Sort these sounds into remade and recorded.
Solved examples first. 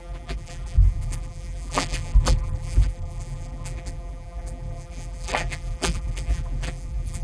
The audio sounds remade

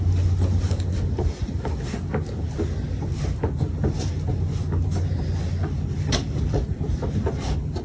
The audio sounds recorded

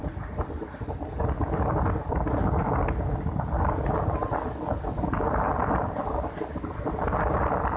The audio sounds recorded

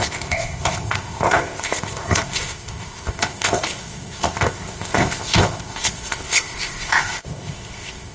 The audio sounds remade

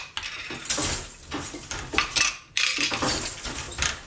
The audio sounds recorded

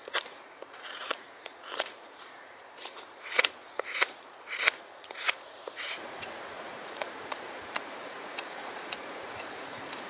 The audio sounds remade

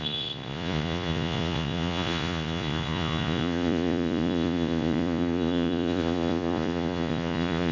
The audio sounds remade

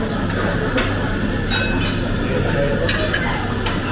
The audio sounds recorded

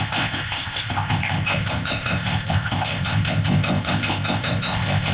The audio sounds remade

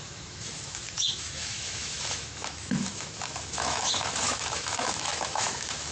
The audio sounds remade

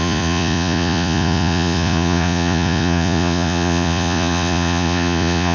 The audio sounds remade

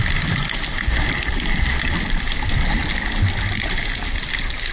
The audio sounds recorded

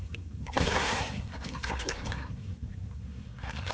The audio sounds remade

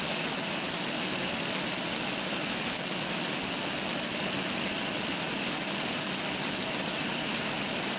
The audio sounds recorded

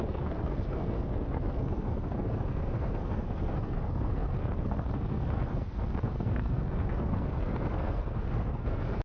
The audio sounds remade